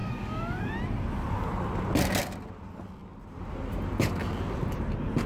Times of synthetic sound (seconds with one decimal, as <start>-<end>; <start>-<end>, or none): 0.0-0.7